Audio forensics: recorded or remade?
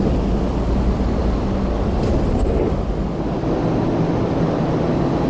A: recorded